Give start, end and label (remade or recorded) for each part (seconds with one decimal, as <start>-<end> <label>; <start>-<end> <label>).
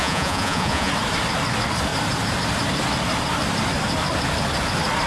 0.0-0.9 remade; 0.9-5.1 recorded